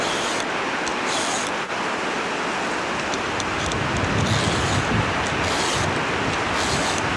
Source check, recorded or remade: recorded